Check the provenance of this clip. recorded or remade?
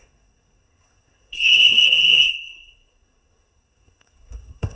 remade